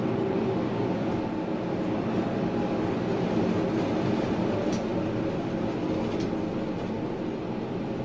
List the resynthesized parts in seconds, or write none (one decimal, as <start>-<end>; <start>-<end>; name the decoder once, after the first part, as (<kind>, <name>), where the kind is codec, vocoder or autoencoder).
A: none